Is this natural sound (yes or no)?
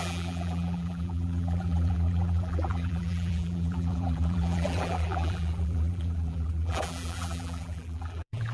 no